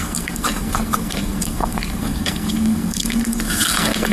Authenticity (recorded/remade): remade